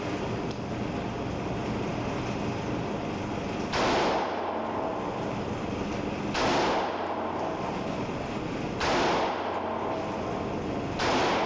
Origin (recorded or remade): recorded